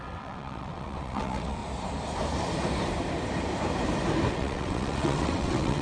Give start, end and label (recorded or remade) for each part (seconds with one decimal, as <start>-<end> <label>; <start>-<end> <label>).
0.0-1.6 remade; 1.6-4.3 recorded; 4.3-5.8 remade